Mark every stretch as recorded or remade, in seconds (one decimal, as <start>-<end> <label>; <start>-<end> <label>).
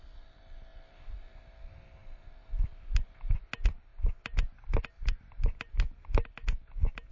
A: 0.0-0.7 recorded; 0.7-1.4 remade; 1.4-7.1 recorded